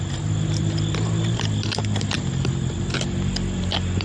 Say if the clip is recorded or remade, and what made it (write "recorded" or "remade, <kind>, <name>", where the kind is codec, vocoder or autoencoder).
remade, vocoder, BigVGAN v2